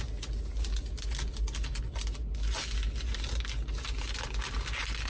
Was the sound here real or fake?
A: real